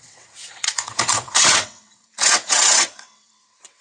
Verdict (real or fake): fake